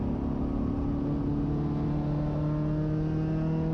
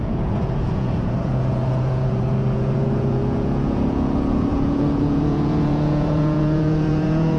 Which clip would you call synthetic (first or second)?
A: second